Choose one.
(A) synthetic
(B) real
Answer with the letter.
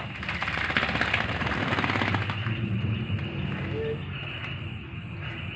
B